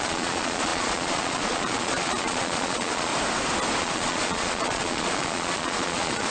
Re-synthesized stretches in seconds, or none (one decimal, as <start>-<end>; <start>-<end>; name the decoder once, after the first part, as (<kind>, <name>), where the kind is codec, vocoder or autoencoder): 0.0-3.1 (vocoder, Vocos); 3.8-6.3